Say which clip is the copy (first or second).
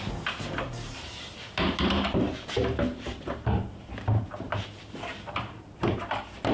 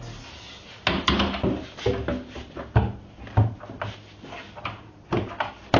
first